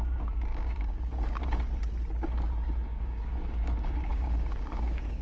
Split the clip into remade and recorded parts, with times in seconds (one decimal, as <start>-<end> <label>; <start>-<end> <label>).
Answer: 0.0-0.5 recorded; 0.5-1.6 remade; 1.6-2.9 recorded; 2.9-5.2 remade